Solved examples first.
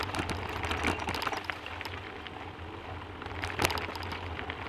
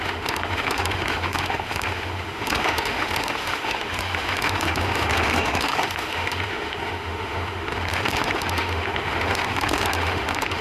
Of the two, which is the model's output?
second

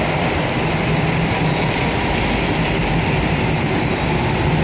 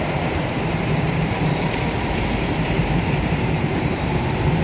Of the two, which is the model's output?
second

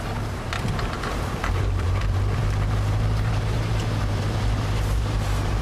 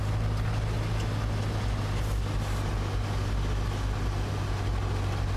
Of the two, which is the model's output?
first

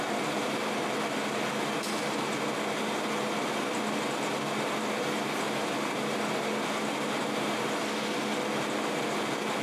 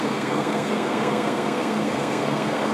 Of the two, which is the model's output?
second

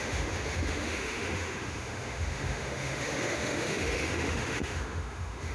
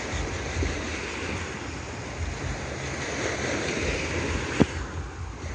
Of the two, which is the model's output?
first